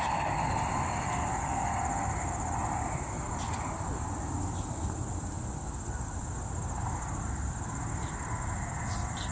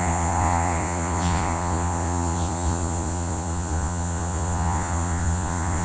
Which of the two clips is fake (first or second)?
second